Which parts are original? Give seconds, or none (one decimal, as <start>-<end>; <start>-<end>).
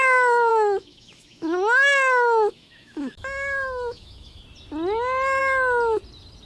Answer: 0.0-0.5; 4.4-6.5